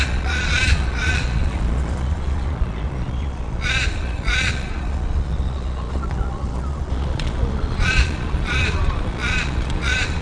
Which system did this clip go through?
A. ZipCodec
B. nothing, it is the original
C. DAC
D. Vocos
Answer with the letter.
D